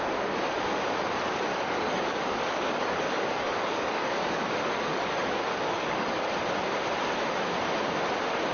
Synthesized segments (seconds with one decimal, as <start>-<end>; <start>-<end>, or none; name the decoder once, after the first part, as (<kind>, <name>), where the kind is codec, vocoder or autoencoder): 1.5-6.3 (codec, DAC)